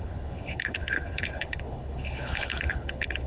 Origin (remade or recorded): remade